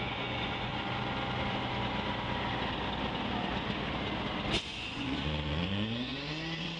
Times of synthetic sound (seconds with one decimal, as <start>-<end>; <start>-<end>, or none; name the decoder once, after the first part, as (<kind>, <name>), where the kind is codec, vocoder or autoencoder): 0.0-0.7 (vocoder, Vocos); 4.6-6.8